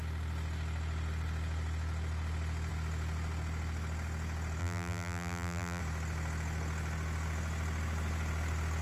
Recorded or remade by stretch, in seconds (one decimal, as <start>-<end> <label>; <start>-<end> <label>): 0.0-4.6 recorded; 4.6-5.8 remade; 5.8-8.8 recorded